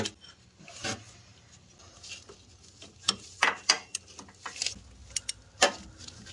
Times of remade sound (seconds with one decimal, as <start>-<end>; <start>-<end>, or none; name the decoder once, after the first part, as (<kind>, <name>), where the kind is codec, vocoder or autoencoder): none